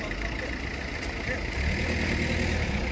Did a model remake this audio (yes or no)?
no